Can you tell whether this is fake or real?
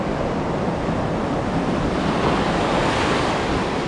real